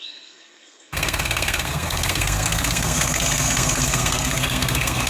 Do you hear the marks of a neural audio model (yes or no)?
yes